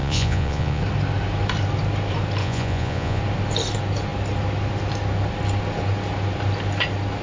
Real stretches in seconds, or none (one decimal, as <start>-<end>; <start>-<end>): 0.8-2.4; 3.2-7.2